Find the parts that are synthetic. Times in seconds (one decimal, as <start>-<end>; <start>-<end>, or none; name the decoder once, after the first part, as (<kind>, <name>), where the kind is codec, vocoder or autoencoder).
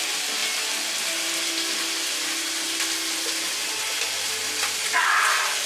none